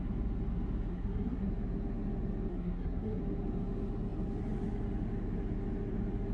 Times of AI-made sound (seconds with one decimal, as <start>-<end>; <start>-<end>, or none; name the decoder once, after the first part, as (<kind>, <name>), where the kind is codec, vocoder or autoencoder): 0.9-1.5 (codec, SNAC); 2.5-3.2